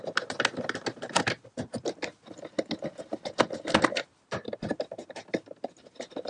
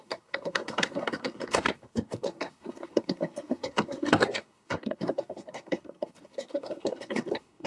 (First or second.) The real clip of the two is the first